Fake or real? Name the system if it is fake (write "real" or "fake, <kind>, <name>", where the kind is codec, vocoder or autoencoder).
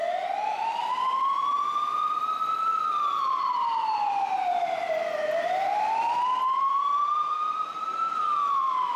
fake, vocoder, BigVGAN v2